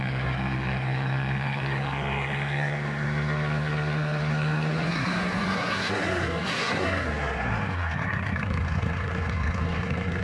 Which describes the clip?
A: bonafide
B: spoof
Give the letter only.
B